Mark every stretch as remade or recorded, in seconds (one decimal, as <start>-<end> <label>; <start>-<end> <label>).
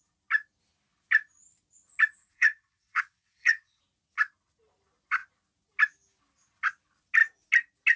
0.0-2.2 recorded; 2.2-3.8 remade; 3.8-8.0 recorded